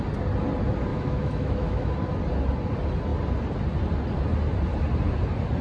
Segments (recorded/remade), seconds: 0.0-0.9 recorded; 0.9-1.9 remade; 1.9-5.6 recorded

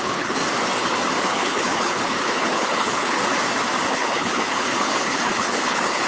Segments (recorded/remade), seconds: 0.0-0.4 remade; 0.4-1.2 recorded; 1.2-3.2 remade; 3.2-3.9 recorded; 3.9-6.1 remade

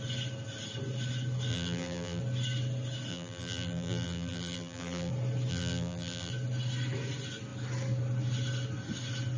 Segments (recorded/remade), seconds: 0.0-1.5 recorded; 1.5-2.2 remade; 2.2-3.1 recorded; 3.1-5.1 remade; 5.1-5.5 recorded; 5.5-6.3 remade; 6.3-9.4 recorded

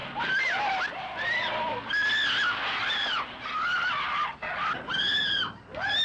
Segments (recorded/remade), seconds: 0.0-1.9 remade; 1.9-2.8 recorded; 2.8-4.3 remade; 4.3-6.0 recorded